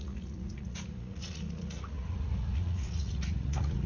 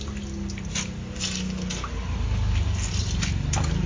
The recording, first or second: second